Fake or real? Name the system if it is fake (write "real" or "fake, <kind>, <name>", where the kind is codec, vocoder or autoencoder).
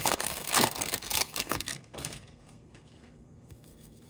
fake, codec, SNAC